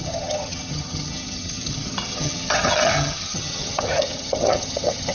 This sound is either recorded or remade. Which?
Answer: remade